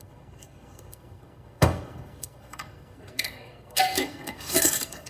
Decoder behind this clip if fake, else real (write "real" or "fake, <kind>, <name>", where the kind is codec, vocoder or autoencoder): fake, codec, SNAC